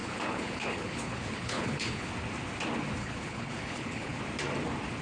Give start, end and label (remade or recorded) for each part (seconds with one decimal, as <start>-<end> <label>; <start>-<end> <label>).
0.0-2.1 remade; 2.1-3.0 recorded; 3.0-4.2 remade; 4.2-5.0 recorded